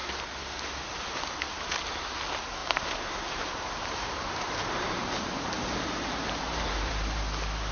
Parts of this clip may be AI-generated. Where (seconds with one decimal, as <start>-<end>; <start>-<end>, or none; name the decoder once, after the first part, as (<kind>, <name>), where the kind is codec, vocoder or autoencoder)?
2.6-7.2 (vocoder, BigVGAN v2)